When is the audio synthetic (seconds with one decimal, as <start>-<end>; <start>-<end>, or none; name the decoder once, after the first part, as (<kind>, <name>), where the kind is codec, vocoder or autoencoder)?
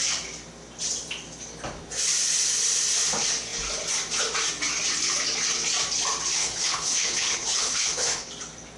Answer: 6.4-8.3 (codec, HILCodec)